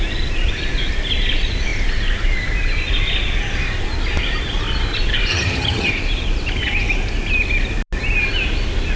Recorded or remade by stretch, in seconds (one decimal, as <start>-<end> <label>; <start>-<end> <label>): 0.0-5.3 recorded; 5.3-5.9 remade; 5.9-9.0 recorded